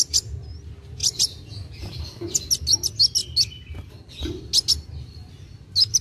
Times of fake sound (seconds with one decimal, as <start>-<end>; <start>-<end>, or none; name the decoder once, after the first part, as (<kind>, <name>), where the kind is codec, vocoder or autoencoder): none